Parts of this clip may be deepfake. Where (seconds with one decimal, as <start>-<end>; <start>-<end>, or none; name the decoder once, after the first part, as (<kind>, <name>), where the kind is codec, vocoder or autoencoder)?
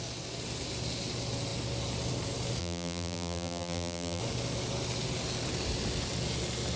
2.6-4.2 (vocoder, BigVGAN v2)